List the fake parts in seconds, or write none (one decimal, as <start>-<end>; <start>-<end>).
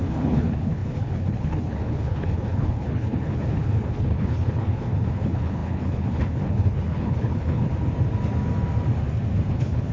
0.0-7.7; 9.5-9.9